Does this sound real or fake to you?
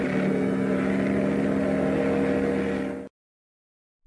real